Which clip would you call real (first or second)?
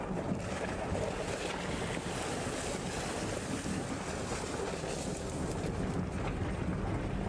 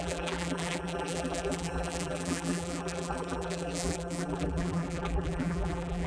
first